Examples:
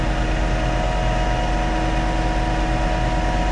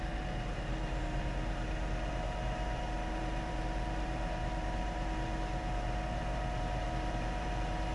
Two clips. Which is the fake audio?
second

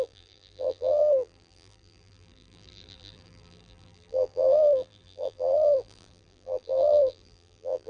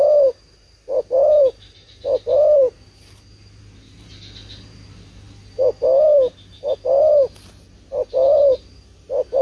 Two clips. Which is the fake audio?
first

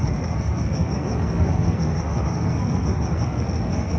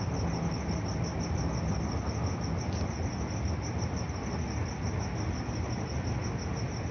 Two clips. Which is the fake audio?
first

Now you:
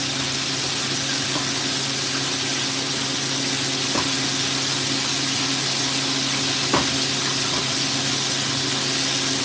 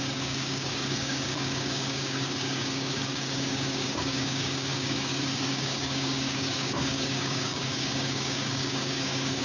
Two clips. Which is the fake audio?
second